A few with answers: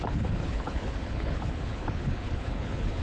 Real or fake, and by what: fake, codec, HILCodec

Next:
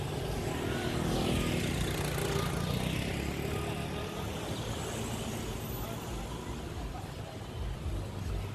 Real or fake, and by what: real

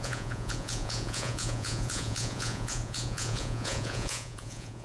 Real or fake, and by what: fake, vocoder, Vocos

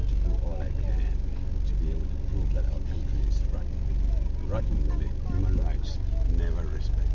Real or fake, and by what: real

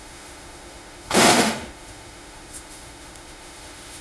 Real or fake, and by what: fake, autoencoder, DAC-VAE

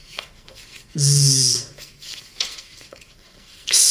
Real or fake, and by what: fake, codec, SNAC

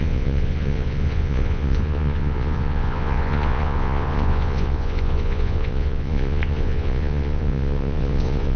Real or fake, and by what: fake, vocoder, Vocos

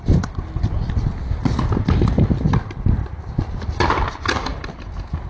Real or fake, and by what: real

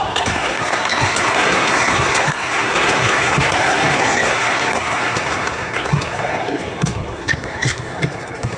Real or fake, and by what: fake, codec, SNAC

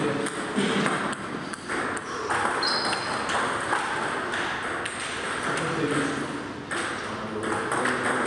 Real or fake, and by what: real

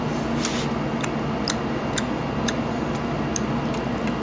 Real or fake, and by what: real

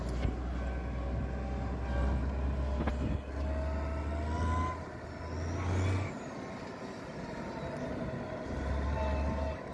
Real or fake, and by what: real